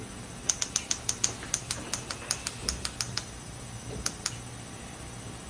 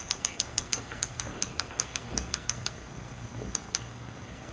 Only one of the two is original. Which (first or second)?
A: first